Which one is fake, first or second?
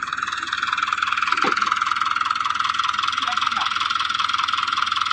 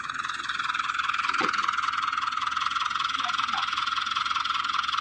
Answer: second